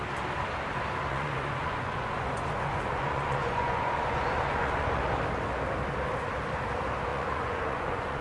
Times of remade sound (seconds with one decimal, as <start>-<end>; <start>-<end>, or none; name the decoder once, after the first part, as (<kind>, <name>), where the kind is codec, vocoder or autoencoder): 1.1-5.0 (vocoder, Vocos); 7.1-8.2